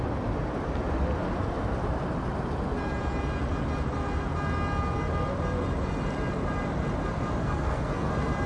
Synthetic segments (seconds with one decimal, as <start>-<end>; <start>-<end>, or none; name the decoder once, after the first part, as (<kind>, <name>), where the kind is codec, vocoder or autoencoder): 7.4-8.1 (codec, SNAC)